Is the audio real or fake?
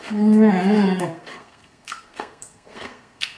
fake